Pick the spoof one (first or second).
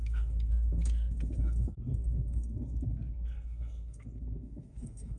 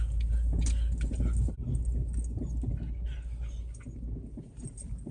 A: first